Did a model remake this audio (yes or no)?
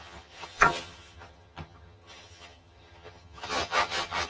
yes